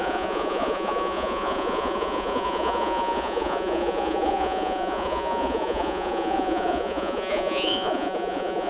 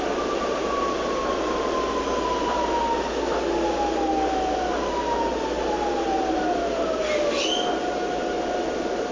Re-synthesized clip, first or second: first